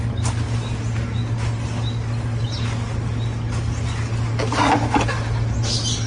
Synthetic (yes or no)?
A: no